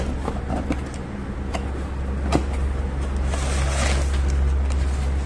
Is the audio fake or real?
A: real